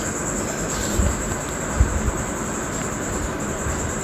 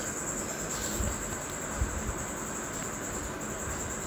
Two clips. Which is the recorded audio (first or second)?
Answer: second